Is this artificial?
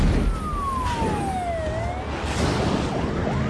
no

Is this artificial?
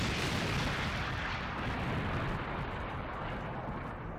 no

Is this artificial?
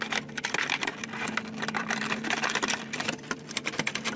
yes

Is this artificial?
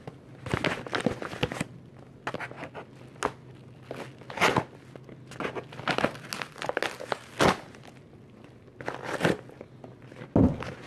no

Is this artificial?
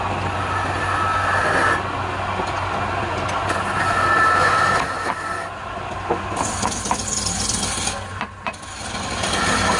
no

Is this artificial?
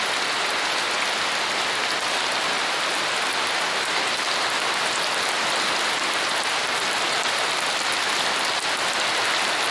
no